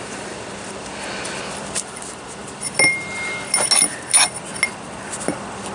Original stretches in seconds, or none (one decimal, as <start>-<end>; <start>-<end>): 0.0-5.7

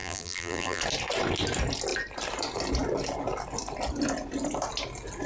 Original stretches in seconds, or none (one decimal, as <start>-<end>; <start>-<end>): 0.8-5.3

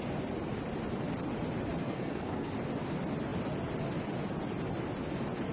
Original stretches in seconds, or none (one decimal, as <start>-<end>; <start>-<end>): 0.0-1.8; 2.5-5.5

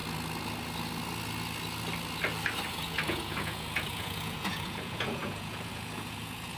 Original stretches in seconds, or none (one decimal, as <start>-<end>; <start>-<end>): 0.0-2.7

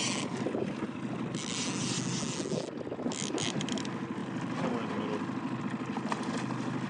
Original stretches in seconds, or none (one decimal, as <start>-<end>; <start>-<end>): 0.0-6.9